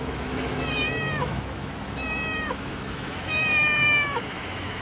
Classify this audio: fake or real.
fake